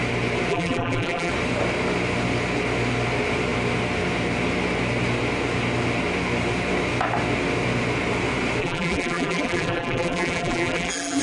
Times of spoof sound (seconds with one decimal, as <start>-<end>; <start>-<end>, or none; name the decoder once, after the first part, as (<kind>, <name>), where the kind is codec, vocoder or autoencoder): 0.5-1.3 (vocoder, BigVGAN v2); 8.6-11.2